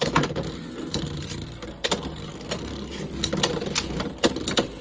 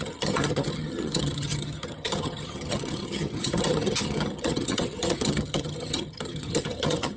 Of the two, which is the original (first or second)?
first